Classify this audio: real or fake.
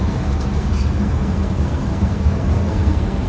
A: fake